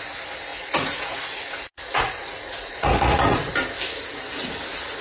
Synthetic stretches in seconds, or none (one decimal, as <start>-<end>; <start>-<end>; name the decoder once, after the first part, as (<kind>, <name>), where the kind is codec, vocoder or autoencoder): 0.5-3.5 (vocoder, Vocos)